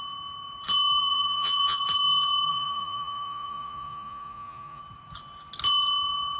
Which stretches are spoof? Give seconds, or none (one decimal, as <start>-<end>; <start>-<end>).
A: 1.0-1.8; 2.5-4.8